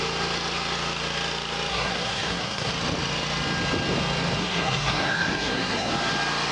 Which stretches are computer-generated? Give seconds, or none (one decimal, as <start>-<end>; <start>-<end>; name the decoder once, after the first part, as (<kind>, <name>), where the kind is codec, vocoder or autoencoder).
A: 1.7-2.7 (codec, SNAC); 4.4-5.9